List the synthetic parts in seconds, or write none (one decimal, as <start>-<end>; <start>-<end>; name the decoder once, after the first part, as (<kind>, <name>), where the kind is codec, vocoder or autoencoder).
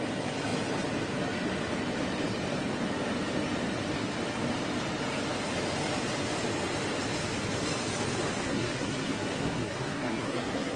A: 8.4-10.8 (codec, SNAC)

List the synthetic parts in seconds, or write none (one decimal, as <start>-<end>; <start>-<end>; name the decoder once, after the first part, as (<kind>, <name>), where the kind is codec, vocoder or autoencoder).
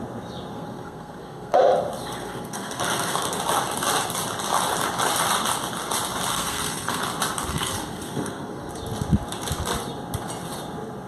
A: 0.5-1.6 (codec, SNAC); 2.0-3.4; 6.3-7.0; 7.5-8.7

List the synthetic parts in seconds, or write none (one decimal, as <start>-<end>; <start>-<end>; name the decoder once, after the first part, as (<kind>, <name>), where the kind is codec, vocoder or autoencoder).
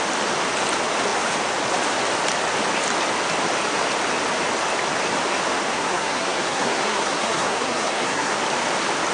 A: 5.7-8.4 (codec, SNAC)